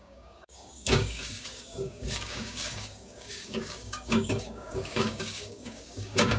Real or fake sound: fake